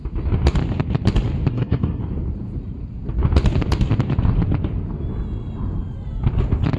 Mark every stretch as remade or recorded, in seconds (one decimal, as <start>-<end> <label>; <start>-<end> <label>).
0.0-1.5 recorded; 1.5-2.0 remade; 2.0-6.8 recorded